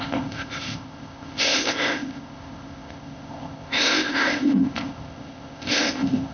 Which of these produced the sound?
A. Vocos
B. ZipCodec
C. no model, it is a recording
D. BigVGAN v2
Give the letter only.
B